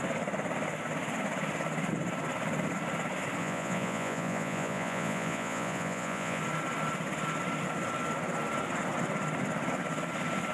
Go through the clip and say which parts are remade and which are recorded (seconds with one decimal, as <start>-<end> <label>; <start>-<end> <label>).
0.0-3.4 recorded; 3.4-6.4 remade; 6.4-10.5 recorded